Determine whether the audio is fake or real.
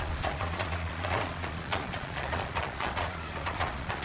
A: fake